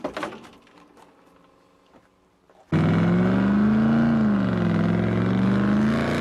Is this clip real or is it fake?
real